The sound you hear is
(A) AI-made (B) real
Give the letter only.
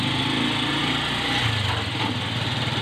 B